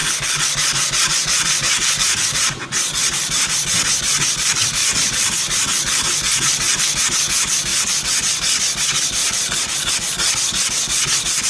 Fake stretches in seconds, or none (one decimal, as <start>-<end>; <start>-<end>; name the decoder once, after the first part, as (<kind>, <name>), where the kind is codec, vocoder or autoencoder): 0.0-2.5 (vocoder, BigVGAN v2); 4.8-7.0; 9.2-9.9